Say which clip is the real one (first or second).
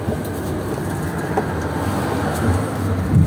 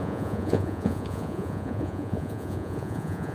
first